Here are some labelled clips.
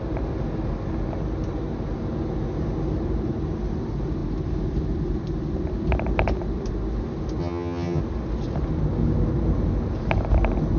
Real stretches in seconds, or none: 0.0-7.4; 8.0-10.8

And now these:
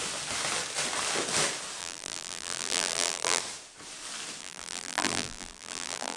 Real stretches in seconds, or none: 0.0-1.8; 3.4-4.4

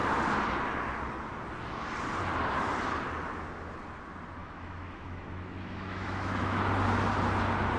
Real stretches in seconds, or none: 0.0-4.4; 6.6-7.8

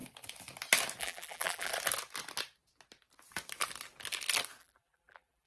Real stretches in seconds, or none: 0.0-1.0; 1.7-4.6

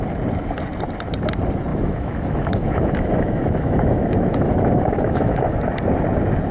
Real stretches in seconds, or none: 0.0-1.7; 5.6-6.5

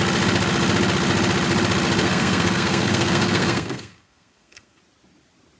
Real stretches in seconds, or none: 0.0-2.0; 4.8-5.6

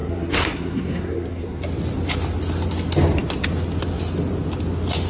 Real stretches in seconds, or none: 1.6-5.1

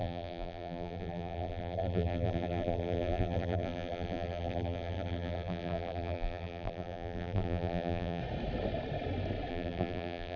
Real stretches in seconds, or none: 8.2-9.5